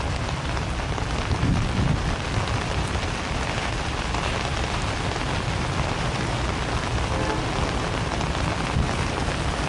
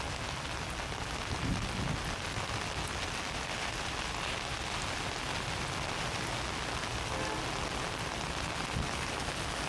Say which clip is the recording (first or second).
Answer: second